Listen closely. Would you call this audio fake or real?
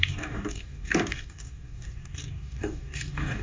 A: fake